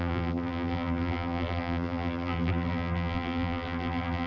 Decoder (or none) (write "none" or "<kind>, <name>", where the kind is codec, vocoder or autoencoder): vocoder, BigVGAN v2